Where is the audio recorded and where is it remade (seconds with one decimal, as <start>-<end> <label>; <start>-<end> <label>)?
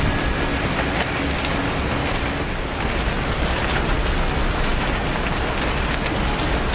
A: 0.0-6.7 recorded